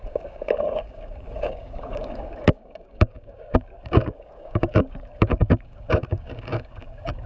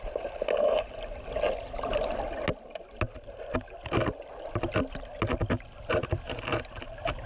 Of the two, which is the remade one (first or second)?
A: first